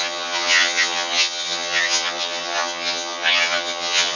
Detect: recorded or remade remade